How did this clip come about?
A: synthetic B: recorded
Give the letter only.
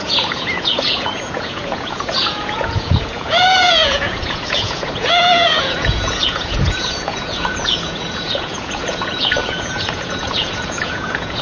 A